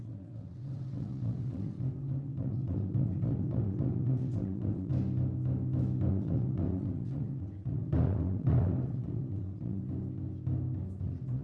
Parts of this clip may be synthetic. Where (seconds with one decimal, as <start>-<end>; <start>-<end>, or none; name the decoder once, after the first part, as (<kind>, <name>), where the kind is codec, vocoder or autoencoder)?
0.0-4.9 (vocoder, WaveNeXt); 6.1-9.8; 11.0-11.4